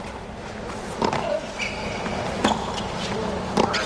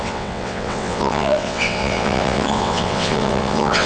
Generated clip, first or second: second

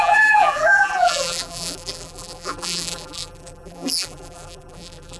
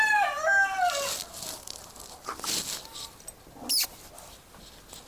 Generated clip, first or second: first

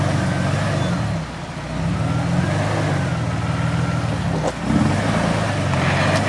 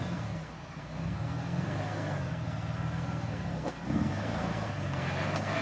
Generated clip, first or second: second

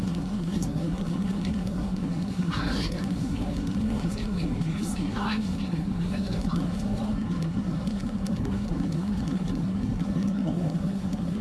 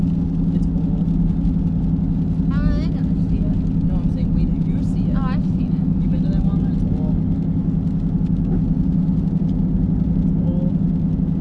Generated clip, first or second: first